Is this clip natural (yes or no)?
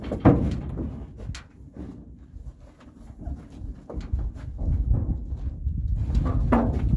yes